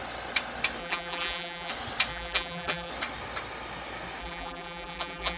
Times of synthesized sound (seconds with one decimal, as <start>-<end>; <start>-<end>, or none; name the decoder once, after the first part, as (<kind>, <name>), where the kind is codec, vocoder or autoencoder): 0.8-1.7 (vocoder, BigVGAN v2); 2.1-2.9; 4.2-5.4